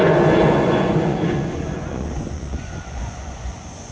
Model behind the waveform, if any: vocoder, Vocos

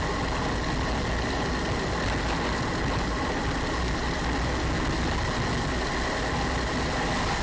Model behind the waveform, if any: none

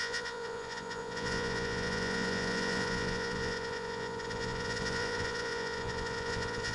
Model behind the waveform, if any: vocoder, Vocos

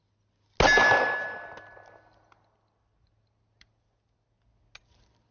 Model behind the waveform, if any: none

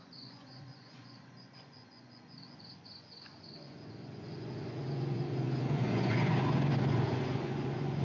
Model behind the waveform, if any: vocoder, Vocos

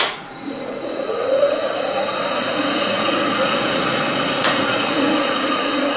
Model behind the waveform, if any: vocoder, Vocos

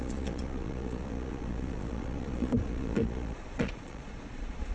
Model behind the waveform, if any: vocoder, Vocos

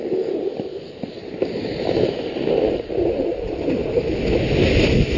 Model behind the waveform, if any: none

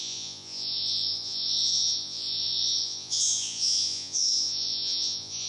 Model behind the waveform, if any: vocoder, Vocos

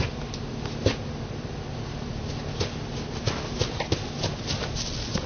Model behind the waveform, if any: none